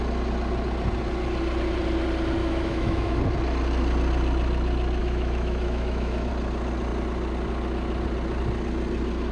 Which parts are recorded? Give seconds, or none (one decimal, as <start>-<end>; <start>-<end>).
0.0-2.4; 3.2-5.0; 6.3-9.3